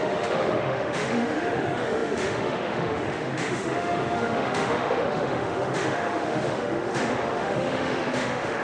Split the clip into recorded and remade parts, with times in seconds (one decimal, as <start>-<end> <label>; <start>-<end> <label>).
0.0-8.6 remade